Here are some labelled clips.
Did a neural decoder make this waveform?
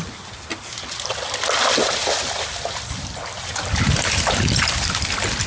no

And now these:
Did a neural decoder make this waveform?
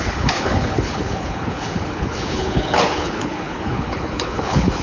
yes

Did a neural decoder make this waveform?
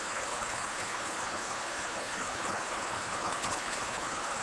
yes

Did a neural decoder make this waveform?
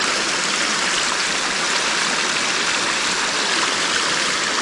no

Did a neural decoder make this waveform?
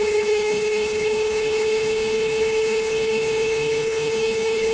yes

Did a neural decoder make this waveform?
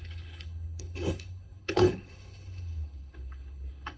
yes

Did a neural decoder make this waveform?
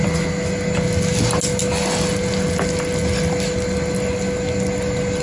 no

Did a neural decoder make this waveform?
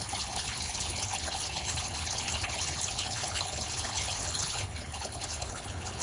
yes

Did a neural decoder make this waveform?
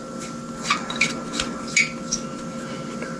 no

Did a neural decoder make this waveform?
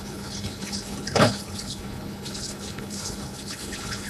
yes